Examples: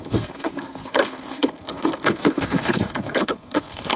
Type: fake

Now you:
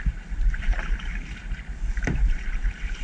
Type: fake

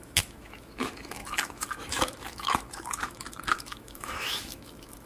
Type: fake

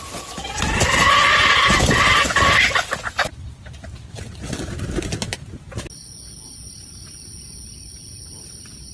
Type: real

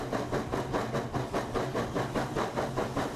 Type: real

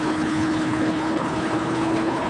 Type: fake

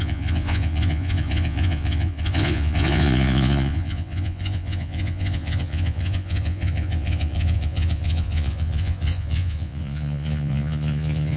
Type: fake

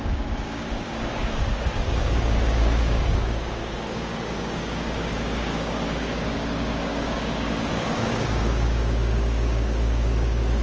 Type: fake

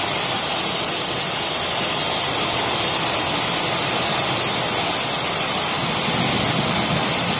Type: real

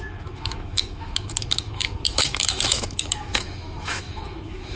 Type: fake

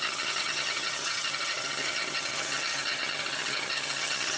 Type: fake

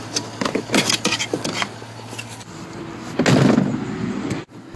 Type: real